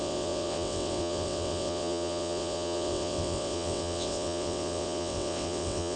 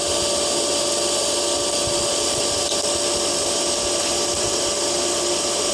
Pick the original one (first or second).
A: second